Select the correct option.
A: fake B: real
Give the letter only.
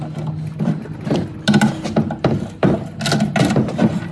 B